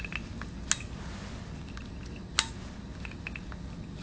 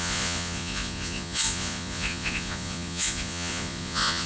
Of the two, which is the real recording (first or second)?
first